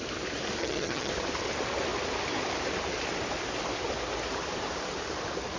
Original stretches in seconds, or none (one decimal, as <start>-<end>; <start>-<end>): 0.0-0.6; 1.1-5.6